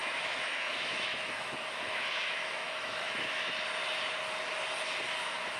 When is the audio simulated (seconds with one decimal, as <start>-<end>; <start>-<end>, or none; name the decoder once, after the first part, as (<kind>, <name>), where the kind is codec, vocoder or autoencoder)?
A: 0.0-3.4 (autoencoder, DAC-VAE)